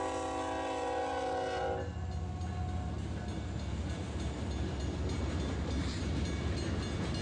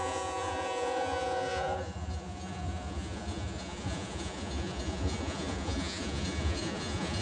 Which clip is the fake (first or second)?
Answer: second